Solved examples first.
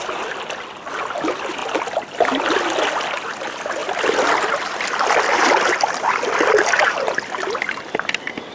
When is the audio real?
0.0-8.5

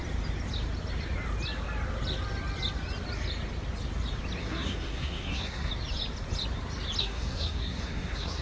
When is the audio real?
0.0-4.4; 5.7-7.0

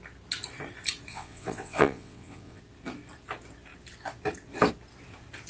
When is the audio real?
0.0-1.1; 2.6-5.5